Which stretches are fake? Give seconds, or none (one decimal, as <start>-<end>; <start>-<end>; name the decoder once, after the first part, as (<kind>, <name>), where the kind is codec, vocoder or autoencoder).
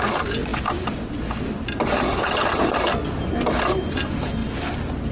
none